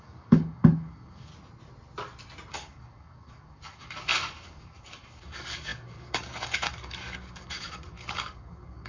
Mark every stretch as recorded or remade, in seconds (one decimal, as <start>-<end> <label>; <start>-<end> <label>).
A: 0.0-1.3 remade; 1.3-2.5 recorded; 2.5-8.9 remade